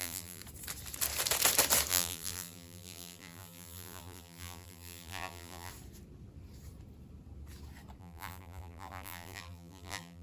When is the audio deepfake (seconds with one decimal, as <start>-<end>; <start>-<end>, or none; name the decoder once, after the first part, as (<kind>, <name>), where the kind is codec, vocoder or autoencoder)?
0.0-0.4 (vocoder, BigVGAN v2); 1.9-5.7; 8.0-10.2